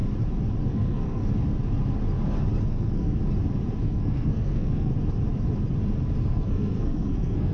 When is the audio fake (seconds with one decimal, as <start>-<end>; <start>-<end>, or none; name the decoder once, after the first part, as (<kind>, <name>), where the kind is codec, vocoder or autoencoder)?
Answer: 0.6-1.2 (codec, SNAC); 2.6-3.2; 3.8-4.9; 6.2-7.5